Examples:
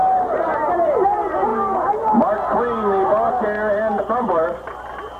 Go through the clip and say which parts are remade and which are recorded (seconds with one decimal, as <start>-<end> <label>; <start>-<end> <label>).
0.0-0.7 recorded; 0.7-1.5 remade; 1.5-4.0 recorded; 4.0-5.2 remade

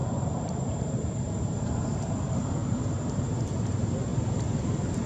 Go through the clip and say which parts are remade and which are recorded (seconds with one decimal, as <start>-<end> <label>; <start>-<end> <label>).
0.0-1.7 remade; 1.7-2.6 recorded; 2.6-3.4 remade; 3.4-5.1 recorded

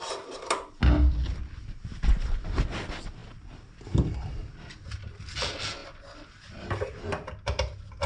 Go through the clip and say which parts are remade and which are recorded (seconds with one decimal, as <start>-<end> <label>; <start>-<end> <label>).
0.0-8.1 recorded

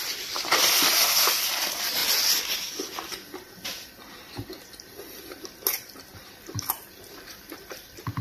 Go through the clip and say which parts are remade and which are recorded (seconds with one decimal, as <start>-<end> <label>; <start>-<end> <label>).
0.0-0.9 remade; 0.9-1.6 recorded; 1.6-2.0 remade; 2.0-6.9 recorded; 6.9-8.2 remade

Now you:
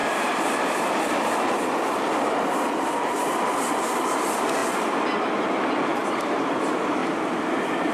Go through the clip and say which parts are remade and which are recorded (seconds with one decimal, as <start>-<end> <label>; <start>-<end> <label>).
0.0-1.0 remade; 1.0-7.9 recorded

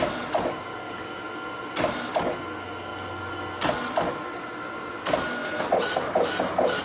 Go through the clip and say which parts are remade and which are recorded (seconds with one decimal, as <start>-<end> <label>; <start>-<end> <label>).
0.0-5.4 recorded; 5.4-6.8 remade